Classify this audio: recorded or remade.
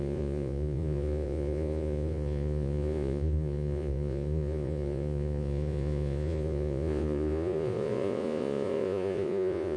remade